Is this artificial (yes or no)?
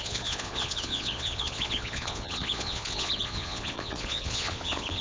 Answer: yes